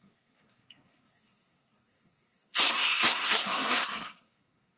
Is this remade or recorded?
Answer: remade